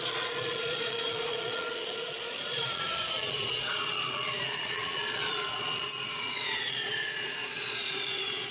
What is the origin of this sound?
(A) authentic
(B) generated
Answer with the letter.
B